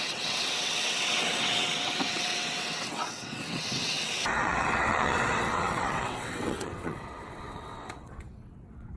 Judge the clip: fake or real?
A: fake